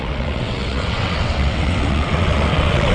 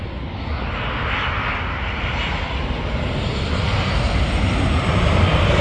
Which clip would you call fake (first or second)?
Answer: first